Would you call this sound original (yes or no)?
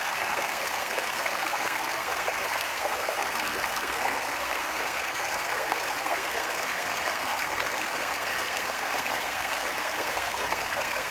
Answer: no